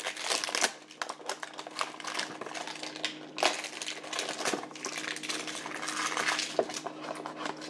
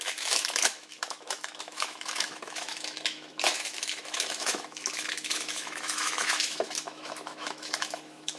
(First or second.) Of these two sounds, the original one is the first